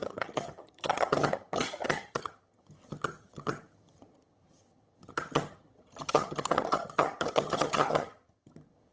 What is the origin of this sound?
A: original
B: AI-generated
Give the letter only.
B